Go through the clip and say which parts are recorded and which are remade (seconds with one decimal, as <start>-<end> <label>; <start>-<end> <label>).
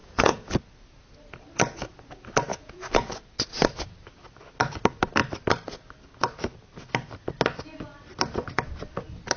0.0-0.5 remade; 0.5-2.5 recorded; 2.5-3.1 remade; 3.1-9.4 recorded